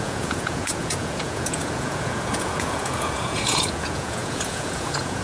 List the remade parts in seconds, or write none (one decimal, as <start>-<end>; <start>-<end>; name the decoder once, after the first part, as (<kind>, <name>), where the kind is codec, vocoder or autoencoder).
0.0-5.2 (vocoder, Vocos)

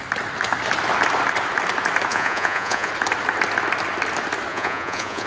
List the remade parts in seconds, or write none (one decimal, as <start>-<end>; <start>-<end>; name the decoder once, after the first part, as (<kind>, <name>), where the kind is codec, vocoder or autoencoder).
2.1-2.9 (vocoder, Vocos); 4.5-5.3

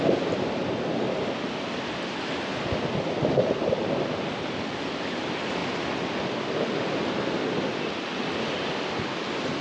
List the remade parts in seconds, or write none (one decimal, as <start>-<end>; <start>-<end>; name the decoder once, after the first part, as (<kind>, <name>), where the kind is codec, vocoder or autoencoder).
none

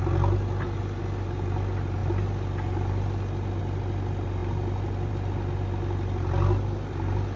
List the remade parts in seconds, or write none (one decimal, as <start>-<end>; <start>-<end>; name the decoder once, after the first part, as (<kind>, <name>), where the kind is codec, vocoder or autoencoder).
none

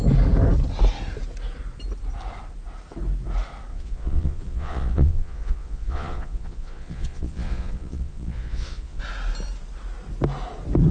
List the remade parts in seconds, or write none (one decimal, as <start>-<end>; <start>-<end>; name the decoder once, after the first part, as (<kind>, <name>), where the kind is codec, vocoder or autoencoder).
3.7-9.0 (vocoder, Vocos)

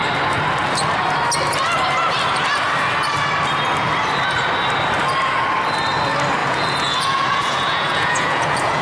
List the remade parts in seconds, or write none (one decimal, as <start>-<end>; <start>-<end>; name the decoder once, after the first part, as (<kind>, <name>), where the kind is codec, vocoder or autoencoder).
6.4-8.8 (vocoder, Vocos)

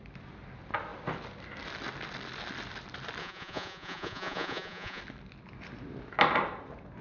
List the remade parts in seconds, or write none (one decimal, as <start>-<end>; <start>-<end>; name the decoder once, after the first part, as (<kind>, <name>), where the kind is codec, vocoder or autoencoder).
3.2-5.0 (vocoder, Vocos)